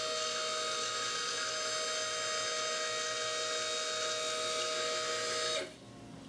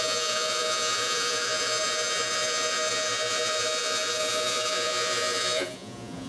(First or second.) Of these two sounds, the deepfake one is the second